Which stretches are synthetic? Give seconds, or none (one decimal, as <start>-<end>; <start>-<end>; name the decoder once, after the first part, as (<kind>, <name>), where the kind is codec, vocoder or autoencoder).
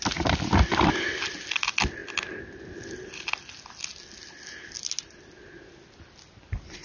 none